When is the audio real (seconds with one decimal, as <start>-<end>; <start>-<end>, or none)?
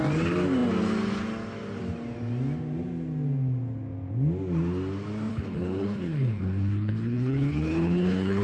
0.0-5.3